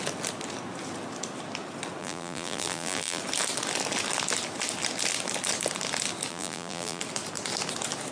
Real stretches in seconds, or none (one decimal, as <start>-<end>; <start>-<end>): 0.0-2.0; 3.2-6.3; 7.0-8.1